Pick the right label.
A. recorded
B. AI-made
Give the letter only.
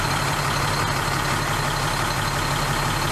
A